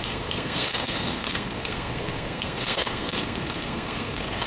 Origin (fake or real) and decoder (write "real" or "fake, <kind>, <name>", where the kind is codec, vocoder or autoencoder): fake, codec, SNAC